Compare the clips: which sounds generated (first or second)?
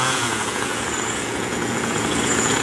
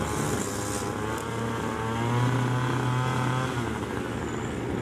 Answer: first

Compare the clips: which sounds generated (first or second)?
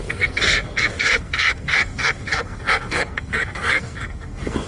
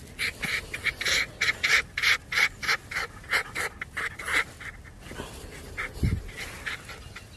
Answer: first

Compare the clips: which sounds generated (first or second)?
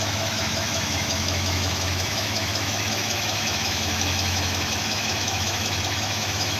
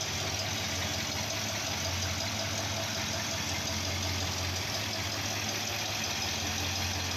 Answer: first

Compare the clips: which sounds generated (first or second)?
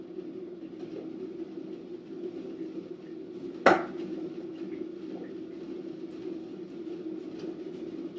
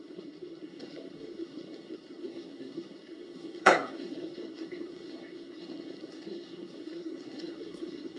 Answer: second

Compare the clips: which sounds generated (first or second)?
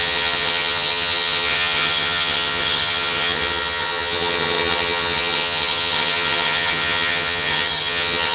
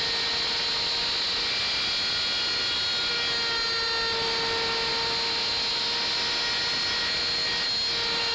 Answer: first